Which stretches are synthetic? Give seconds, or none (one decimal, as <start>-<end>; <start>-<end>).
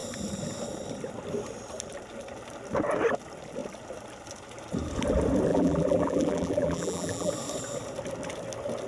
5.5-7.3